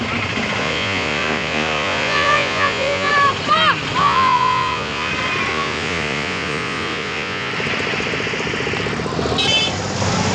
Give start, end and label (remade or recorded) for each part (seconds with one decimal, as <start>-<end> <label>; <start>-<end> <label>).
0.0-0.6 recorded; 0.6-3.1 remade; 3.1-4.0 recorded; 4.0-5.1 remade; 5.1-5.5 recorded; 5.5-7.5 remade; 7.5-10.3 recorded